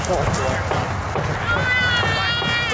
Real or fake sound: real